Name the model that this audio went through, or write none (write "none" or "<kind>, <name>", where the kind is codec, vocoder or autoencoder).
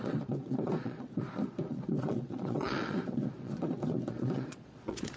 vocoder, Vocos